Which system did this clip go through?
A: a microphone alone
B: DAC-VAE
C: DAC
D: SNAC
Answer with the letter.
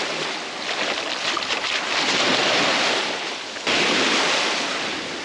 A